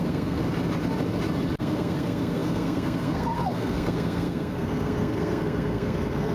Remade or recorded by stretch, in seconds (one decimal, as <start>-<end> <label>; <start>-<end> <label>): 0.0-0.4 remade; 0.4-1.6 recorded; 1.6-6.3 remade